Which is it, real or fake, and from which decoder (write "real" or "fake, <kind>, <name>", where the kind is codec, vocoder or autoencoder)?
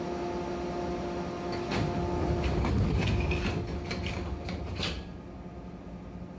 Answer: real